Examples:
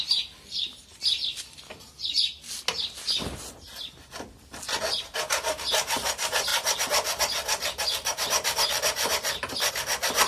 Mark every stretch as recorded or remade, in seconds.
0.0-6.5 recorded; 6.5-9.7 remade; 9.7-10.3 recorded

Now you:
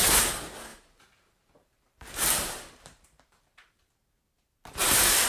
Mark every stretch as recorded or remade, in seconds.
0.0-0.7 recorded; 0.7-3.9 remade; 3.9-5.3 recorded

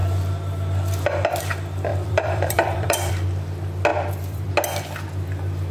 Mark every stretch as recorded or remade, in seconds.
0.0-1.9 recorded; 1.9-3.1 remade; 3.1-3.9 recorded; 3.9-4.5 remade; 4.5-5.7 recorded

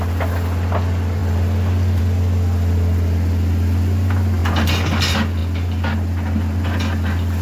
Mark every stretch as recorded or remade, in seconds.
0.0-7.4 recorded

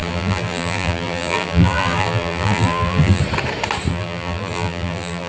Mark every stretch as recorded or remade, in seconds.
0.0-3.2 remade; 3.2-3.9 recorded; 3.9-5.3 remade